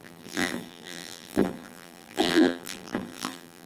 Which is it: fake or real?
fake